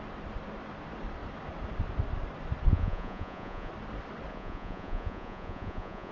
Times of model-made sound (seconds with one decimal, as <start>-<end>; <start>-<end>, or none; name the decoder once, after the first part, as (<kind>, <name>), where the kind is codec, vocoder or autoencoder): 2.7-3.7 (vocoder, Vocos); 4.3-6.1